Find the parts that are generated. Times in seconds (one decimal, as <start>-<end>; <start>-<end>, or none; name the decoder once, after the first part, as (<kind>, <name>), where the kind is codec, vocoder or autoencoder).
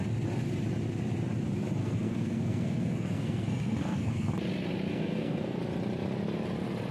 1.8-4.3 (codec, SNAC); 4.9-5.6